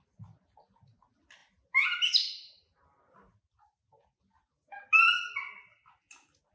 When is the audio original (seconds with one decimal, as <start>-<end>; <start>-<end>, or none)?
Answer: 0.0-6.5

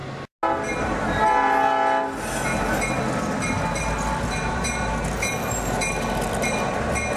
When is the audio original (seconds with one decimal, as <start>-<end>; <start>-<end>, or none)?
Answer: 0.0-7.2

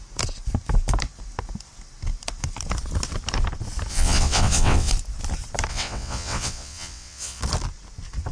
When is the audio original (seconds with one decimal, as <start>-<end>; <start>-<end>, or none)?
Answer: 0.0-3.9; 4.9-5.7; 7.4-8.3

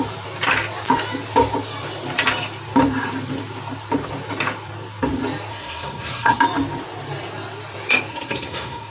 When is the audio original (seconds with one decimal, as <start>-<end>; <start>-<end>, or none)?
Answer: 0.0-5.5; 6.4-8.1

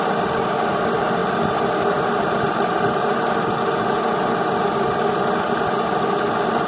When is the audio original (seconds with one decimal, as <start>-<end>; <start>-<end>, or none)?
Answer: 0.0-6.7